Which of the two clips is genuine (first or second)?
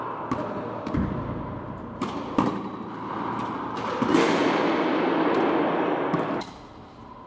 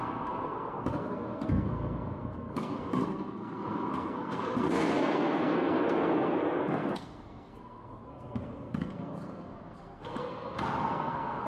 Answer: first